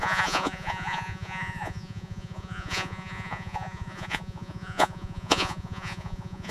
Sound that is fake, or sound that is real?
fake